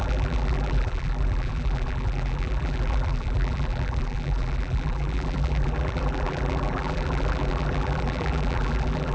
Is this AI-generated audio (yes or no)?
yes